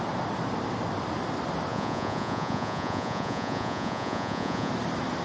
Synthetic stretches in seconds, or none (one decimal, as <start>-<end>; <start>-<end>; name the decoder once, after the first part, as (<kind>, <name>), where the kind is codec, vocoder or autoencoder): 1.7-4.7 (vocoder, Vocos)